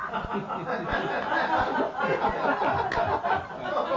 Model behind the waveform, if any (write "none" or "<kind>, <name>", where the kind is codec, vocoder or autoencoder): none